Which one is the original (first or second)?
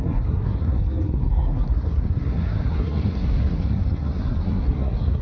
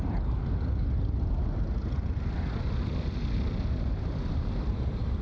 second